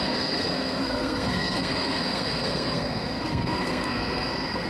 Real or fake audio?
fake